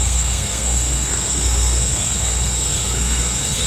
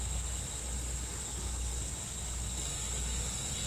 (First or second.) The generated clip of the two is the first